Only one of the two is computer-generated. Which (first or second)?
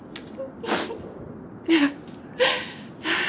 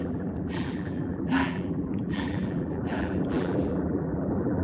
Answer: second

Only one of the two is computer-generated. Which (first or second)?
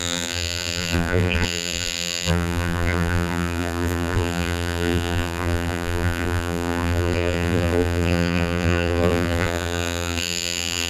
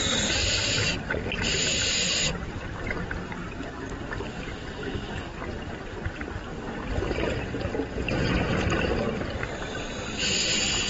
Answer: first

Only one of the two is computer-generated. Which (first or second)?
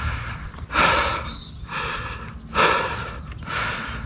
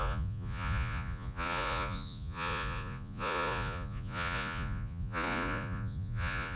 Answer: second